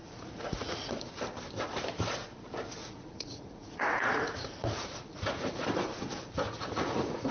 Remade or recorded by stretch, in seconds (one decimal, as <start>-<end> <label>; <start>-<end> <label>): 0.0-1.2 remade; 1.2-2.8 recorded; 2.8-7.3 remade